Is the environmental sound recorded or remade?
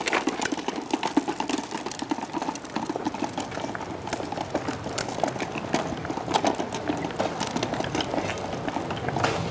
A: recorded